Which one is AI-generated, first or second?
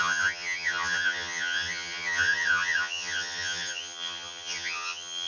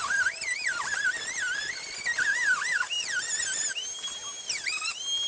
first